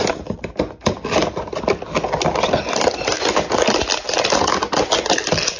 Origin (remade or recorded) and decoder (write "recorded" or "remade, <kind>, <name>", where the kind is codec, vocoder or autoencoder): recorded